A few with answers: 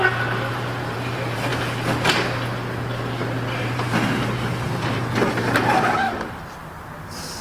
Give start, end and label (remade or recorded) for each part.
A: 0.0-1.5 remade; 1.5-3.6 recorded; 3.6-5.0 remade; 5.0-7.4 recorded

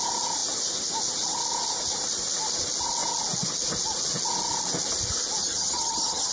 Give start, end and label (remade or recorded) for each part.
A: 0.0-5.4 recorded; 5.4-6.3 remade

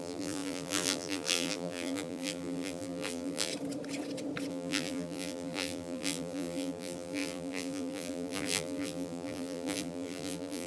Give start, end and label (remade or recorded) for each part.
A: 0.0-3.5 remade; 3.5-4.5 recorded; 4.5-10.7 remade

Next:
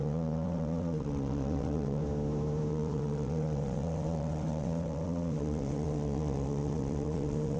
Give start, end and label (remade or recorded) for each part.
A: 0.0-2.0 remade; 2.0-2.7 recorded; 2.7-7.6 remade

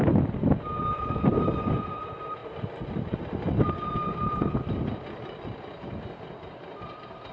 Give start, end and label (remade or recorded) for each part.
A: 0.0-7.3 recorded

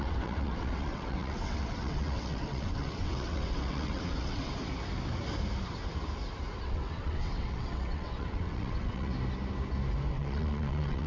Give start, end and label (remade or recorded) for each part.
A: 0.0-4.5 remade; 4.5-6.6 recorded; 6.6-9.1 remade; 9.1-10.1 recorded; 10.1-11.1 remade

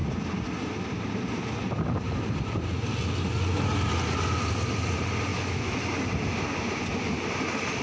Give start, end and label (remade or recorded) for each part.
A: 0.0-5.3 recorded; 5.3-5.8 remade; 5.8-7.8 recorded

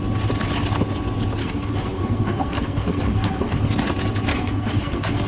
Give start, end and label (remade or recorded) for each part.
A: 0.0-1.4 recorded; 1.4-3.7 remade; 3.7-4.3 recorded; 4.3-5.3 remade